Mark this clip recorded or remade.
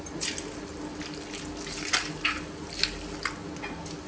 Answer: recorded